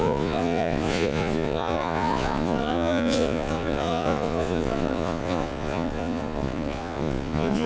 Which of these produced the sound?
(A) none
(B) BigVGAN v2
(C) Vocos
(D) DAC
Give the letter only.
C